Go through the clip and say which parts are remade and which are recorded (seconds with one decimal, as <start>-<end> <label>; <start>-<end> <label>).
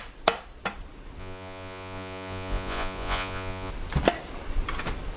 0.0-1.2 recorded; 1.2-3.7 remade; 3.7-5.2 recorded